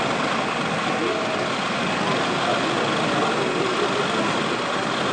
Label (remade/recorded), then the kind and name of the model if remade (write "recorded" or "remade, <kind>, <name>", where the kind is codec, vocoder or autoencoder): recorded